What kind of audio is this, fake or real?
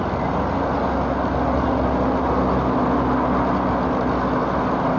real